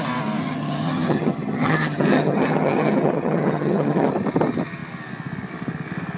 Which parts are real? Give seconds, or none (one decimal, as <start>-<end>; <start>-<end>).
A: 0.0-0.4; 4.1-6.2